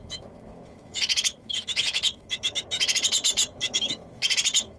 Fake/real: fake